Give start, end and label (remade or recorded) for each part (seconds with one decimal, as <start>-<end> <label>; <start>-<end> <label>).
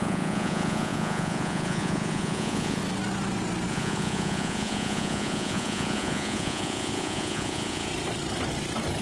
0.0-2.8 remade; 2.8-3.7 recorded; 3.7-7.9 remade; 7.9-9.0 recorded